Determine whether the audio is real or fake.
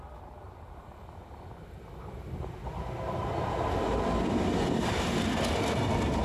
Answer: real